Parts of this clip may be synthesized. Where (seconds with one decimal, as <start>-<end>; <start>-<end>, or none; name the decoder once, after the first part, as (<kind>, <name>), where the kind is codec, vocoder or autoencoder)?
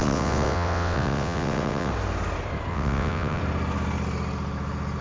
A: 0.0-1.9 (vocoder, WaveNeXt); 2.7-3.4